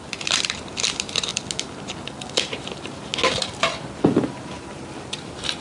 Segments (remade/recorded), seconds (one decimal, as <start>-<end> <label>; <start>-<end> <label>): 0.0-1.3 remade; 1.3-2.4 recorded; 2.4-3.1 remade; 3.1-4.3 recorded; 4.3-5.6 remade